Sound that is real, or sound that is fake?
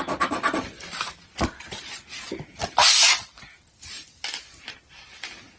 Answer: fake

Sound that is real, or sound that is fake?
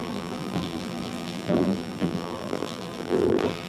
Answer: fake